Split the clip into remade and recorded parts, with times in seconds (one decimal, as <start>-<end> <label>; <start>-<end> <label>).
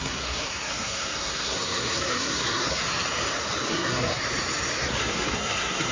0.0-2.8 remade; 2.8-3.7 recorded; 3.7-4.2 remade; 4.2-5.0 recorded; 5.0-5.9 remade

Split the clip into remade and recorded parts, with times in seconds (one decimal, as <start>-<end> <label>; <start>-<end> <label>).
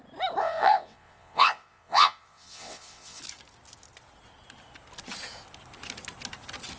0.0-0.4 recorded; 0.4-3.2 remade; 3.2-6.8 recorded